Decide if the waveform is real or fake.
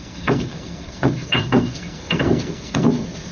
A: fake